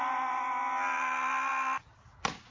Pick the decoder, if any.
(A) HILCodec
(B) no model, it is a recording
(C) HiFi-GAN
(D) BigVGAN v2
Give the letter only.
B